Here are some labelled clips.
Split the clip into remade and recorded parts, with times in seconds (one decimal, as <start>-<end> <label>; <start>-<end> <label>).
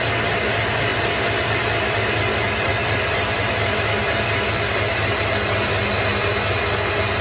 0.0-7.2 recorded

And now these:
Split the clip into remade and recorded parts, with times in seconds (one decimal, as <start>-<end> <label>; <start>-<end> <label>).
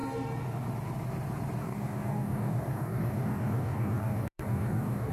0.0-1.6 recorded; 1.6-5.1 remade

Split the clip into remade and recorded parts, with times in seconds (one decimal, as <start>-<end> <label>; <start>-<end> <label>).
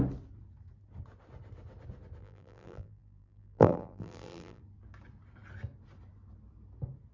0.0-2.2 recorded; 2.2-4.6 remade; 4.6-7.1 recorded